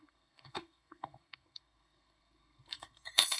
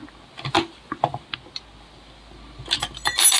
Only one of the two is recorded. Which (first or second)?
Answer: second